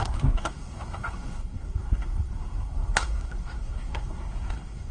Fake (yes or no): yes